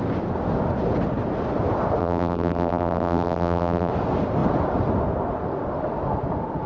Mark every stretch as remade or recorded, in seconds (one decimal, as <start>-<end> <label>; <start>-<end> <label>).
0.0-2.0 recorded; 2.0-3.9 remade; 3.9-6.7 recorded